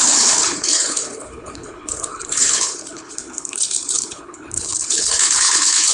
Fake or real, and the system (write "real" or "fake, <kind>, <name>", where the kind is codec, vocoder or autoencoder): fake, codec, HILCodec